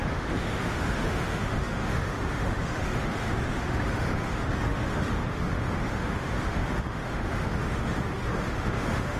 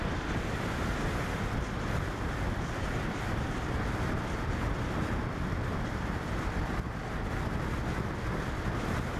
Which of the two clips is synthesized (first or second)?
first